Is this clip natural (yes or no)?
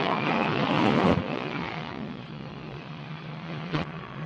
no